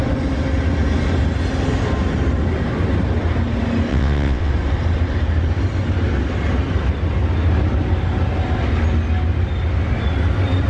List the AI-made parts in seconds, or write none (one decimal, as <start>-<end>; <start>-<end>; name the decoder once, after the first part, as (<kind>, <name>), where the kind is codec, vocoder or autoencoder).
3.9-4.5 (vocoder, WaveNeXt)